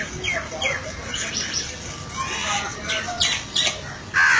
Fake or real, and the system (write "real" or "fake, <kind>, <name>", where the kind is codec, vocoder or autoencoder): real